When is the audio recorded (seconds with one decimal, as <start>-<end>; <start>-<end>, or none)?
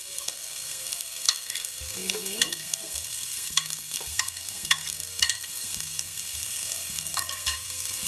none